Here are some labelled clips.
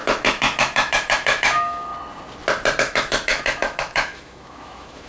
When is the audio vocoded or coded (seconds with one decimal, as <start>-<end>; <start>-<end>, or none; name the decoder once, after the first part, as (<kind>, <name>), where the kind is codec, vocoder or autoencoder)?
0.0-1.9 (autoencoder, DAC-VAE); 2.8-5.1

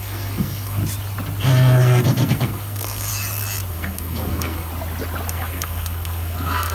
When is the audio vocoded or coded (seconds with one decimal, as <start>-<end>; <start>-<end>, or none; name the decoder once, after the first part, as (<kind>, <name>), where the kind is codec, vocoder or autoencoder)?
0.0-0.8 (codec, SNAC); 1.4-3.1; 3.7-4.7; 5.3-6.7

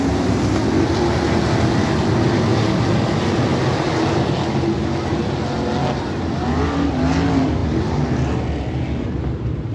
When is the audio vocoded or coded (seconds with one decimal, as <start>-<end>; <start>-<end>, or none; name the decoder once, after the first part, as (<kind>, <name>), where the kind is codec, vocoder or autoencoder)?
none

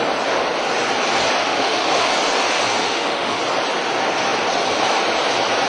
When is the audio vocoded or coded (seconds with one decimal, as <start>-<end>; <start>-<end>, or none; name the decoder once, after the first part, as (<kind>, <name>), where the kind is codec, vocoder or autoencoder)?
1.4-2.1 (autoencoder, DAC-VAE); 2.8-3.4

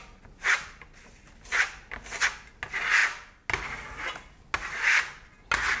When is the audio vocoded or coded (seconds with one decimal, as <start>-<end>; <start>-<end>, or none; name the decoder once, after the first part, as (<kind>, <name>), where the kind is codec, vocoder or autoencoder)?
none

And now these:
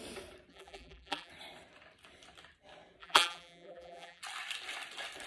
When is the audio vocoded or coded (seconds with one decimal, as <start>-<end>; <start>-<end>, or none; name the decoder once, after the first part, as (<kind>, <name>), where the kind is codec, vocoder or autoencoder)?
0.5-1.3 (vocoder, BigVGAN v2); 3.0-4.2

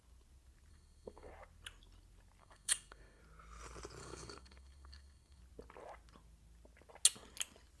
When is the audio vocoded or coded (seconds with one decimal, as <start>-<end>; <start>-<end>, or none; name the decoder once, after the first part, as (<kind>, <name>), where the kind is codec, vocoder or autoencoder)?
0.7-1.3 (codec, SNAC); 2.4-3.2; 4.0-5.4